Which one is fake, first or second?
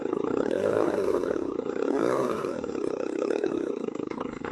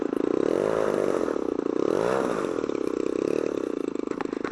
first